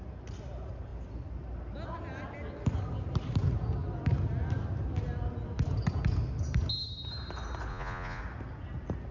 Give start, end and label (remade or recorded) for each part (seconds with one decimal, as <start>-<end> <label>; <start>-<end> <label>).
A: 0.0-7.7 recorded; 7.7-8.2 remade; 8.2-9.1 recorded